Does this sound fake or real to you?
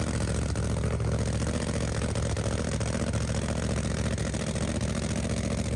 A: real